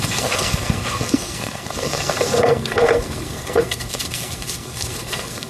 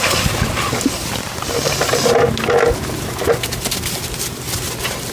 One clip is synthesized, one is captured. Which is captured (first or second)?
second